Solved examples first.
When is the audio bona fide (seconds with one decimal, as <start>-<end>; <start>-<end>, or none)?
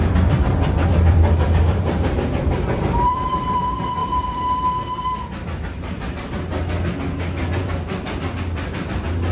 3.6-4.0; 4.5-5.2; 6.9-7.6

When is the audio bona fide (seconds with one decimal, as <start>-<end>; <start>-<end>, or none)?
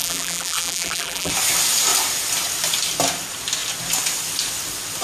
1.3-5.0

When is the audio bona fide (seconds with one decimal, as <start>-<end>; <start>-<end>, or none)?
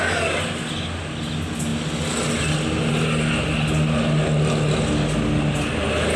0.0-6.2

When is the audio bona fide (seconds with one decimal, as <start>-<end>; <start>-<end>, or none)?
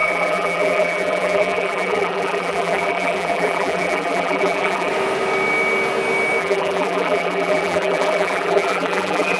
4.9-6.4